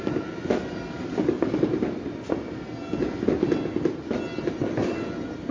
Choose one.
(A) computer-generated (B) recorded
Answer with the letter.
B